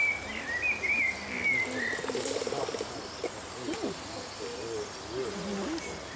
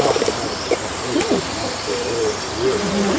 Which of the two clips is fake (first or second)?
second